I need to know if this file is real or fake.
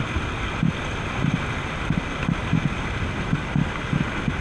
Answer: real